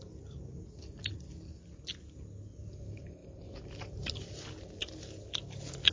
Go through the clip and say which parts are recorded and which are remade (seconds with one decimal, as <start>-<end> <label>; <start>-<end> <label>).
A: 0.0-5.9 recorded